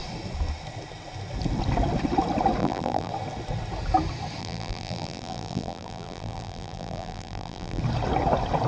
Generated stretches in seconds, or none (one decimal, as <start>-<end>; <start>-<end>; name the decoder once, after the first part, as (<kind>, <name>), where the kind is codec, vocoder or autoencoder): 2.6-3.1 (vocoder, BigVGAN v2); 4.4-7.8